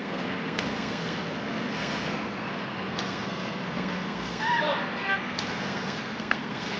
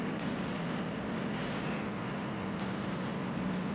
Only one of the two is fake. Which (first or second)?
first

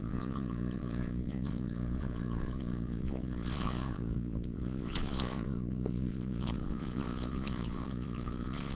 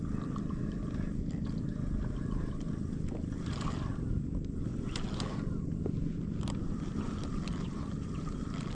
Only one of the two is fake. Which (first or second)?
first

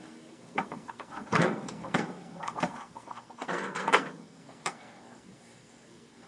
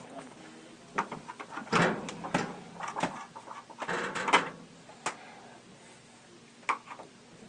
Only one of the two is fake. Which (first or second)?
first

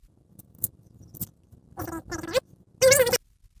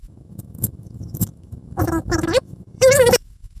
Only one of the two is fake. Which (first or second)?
second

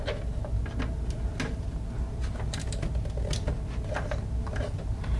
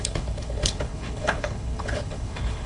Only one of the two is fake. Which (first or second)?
second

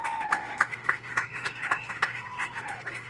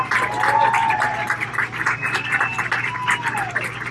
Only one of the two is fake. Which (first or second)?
first